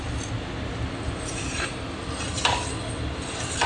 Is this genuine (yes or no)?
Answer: yes